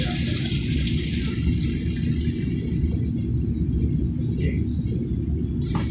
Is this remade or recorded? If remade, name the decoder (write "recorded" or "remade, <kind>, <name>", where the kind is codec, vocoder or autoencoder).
recorded